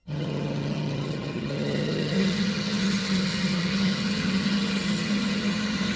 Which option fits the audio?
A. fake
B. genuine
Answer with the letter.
A